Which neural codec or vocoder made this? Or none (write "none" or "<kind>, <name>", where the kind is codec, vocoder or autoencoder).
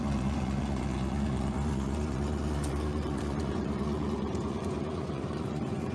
vocoder, Vocos